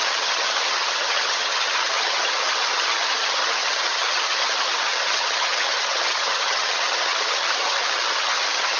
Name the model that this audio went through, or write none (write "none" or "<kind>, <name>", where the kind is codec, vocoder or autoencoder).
vocoder, HiFi-GAN